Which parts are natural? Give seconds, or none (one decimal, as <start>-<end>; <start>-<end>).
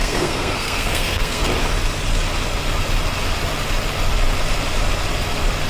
1.4-5.7